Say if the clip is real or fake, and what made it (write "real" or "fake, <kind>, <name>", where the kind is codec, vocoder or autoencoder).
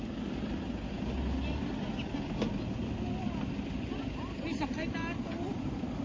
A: real